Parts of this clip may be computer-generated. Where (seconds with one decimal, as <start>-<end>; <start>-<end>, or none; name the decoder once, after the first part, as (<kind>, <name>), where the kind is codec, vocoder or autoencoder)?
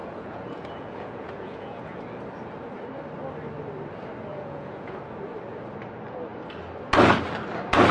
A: 0.0-2.0 (vocoder, Vocos); 4.3-5.0